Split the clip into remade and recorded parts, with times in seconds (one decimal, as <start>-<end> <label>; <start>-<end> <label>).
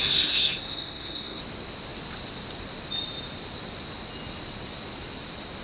0.0-1.4 remade; 1.4-5.6 recorded